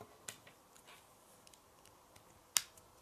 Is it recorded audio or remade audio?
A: recorded